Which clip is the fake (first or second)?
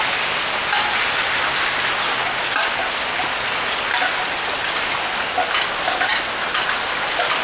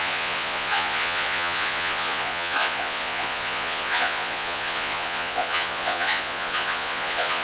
second